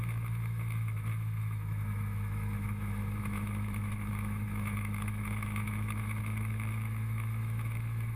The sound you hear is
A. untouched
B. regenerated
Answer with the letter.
B